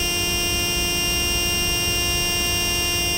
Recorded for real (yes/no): yes